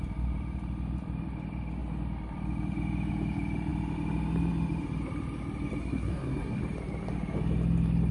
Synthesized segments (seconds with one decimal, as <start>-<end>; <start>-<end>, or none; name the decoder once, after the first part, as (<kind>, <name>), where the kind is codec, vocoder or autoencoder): 5.8-6.6 (codec, SNAC)